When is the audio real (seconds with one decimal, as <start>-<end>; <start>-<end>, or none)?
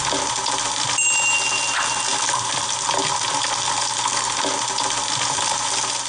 0.0-6.1